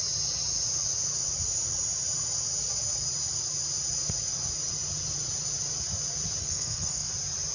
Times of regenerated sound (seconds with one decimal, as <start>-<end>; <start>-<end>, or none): 6.4-7.1